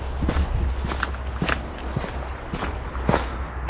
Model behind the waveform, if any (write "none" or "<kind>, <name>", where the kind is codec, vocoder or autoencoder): none